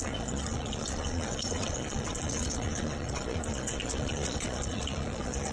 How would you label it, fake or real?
fake